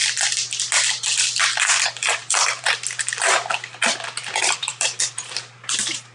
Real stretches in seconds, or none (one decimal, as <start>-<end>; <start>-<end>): 0.0-1.4